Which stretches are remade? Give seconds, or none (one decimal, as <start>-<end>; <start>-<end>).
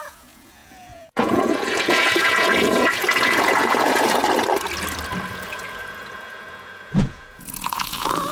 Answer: 0.0-4.2; 5.3-8.3